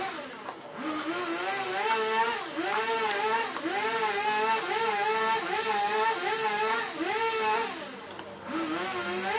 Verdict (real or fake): real